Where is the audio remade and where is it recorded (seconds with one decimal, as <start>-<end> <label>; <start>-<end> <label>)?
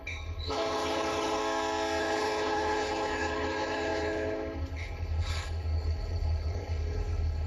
0.0-1.4 remade; 1.4-2.0 recorded; 2.0-7.5 remade